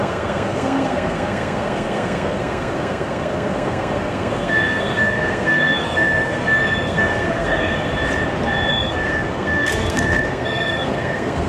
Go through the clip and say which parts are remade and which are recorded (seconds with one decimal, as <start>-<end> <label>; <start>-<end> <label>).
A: 0.0-7.9 remade; 7.9-8.7 recorded; 8.7-11.5 remade